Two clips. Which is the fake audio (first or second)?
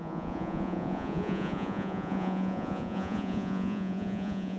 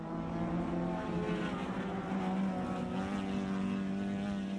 first